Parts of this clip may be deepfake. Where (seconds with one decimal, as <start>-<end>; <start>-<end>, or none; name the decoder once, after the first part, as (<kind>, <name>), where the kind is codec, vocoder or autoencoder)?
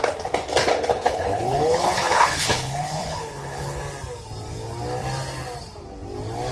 0.9-3.8 (codec, HILCodec)